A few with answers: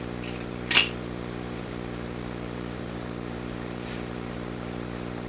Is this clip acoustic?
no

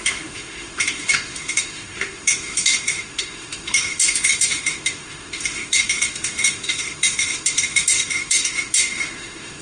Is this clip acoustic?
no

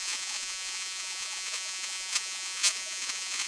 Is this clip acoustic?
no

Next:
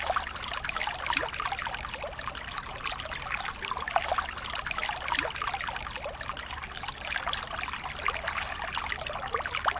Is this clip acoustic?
yes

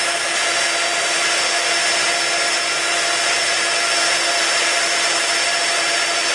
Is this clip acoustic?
yes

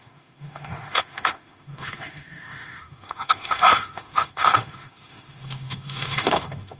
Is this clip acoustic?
no